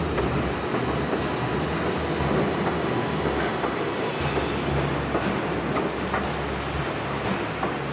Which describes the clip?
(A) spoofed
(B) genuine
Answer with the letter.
B